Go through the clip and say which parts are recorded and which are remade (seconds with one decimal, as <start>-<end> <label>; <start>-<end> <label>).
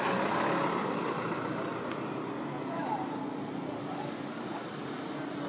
0.0-5.5 recorded